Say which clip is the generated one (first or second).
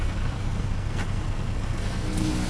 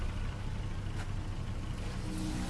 first